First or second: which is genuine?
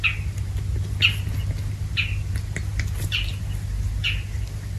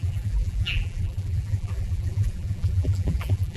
first